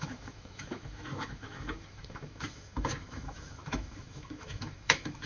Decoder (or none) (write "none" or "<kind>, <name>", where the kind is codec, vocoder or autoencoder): autoencoder, DAC-VAE